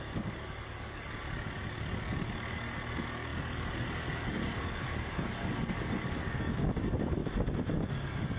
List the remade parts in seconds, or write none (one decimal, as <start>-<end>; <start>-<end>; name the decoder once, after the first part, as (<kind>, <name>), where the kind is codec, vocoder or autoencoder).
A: 0.0-7.2 (codec, DAC); 7.9-8.4